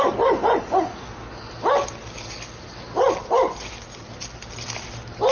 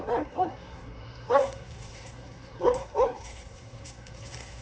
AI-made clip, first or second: second